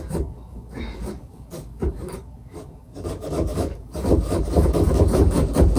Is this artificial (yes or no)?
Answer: yes